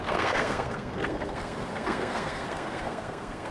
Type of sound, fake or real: fake